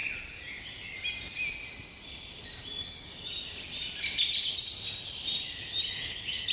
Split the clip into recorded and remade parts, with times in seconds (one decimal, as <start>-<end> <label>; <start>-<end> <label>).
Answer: 0.0-3.4 recorded; 3.4-6.5 remade